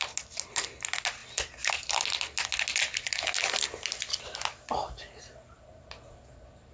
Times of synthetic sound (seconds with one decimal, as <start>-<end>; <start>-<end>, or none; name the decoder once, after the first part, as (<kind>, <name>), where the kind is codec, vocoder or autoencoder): none

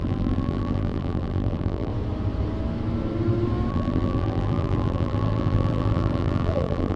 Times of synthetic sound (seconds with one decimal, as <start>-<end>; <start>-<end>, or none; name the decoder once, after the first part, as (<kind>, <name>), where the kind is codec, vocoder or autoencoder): 0.0-1.9 (vocoder, BigVGAN v2); 3.7-7.0

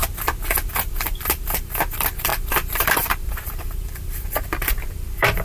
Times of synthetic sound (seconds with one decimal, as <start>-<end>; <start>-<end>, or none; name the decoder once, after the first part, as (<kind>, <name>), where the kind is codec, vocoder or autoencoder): 0.7-5.4 (vocoder, BigVGAN v2)

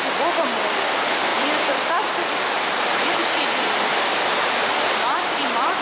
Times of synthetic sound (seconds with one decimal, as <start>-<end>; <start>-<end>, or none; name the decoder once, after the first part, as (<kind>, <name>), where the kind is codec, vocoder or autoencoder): 0.0-5.8 (vocoder, BigVGAN v2)

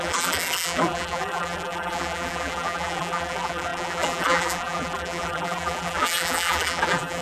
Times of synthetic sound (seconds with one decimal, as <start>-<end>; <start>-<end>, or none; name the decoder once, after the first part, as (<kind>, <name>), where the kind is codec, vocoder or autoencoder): 0.0-7.2 (vocoder, BigVGAN v2)

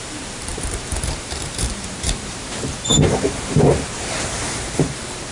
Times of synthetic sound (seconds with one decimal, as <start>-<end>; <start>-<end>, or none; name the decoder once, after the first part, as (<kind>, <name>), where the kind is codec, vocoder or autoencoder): 0.0-5.3 (vocoder, BigVGAN v2)

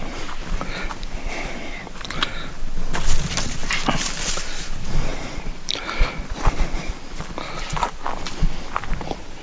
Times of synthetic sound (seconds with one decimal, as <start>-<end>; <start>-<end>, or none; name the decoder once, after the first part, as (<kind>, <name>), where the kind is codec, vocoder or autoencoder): 0.4-1.5 (vocoder, BigVGAN v2); 3.6-4.3; 5.1-7.9

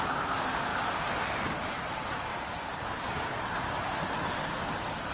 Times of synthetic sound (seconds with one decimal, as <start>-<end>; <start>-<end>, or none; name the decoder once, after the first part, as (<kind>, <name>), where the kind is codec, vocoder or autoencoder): 0.7-1.9 (vocoder, BigVGAN v2); 2.3-3.0